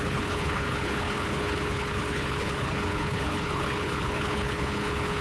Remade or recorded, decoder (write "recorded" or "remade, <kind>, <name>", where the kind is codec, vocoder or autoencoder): remade, codec, HILCodec